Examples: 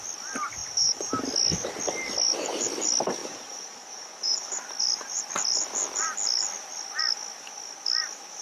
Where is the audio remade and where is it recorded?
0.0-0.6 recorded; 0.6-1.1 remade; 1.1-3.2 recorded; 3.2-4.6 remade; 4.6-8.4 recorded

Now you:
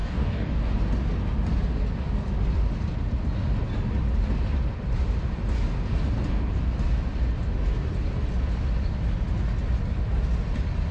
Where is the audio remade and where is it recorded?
0.0-0.6 remade; 0.6-10.9 recorded

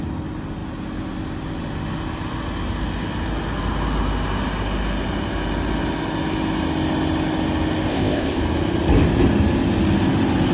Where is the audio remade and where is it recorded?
0.0-7.9 recorded; 7.9-8.4 remade; 8.4-10.5 recorded

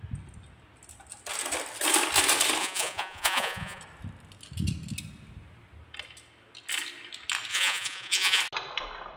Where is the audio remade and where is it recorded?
0.0-2.6 recorded; 2.6-3.8 remade; 3.8-7.5 recorded; 7.5-8.4 remade; 8.4-9.2 recorded

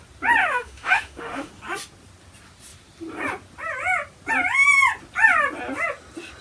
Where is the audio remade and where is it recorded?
0.0-0.4 recorded; 0.4-1.5 remade; 1.5-6.4 recorded

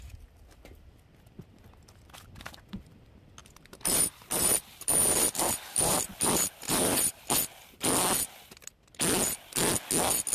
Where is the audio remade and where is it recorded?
0.0-3.4 recorded; 3.4-7.4 remade; 7.4-10.3 recorded

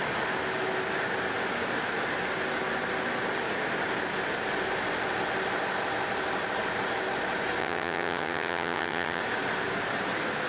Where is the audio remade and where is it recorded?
0.0-7.6 recorded; 7.6-9.2 remade; 9.2-10.5 recorded